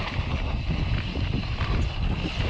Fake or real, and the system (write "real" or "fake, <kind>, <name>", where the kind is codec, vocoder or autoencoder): real